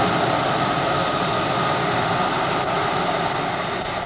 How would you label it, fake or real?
real